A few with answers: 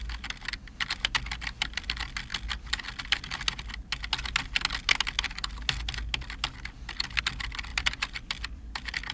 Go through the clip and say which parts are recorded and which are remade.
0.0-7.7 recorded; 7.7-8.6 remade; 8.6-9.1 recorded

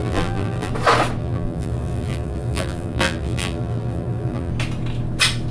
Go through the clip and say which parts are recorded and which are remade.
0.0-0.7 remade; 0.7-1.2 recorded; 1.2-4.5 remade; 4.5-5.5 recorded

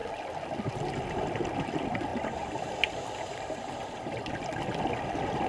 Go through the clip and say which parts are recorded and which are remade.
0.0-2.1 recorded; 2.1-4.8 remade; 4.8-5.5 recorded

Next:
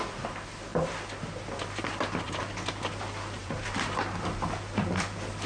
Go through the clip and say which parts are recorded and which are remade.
0.0-0.7 recorded; 0.7-2.3 remade; 2.3-3.4 recorded; 3.4-5.5 remade